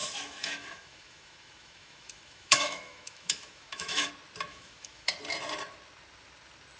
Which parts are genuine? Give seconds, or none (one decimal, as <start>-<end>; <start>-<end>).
4.1-4.5; 5.1-6.8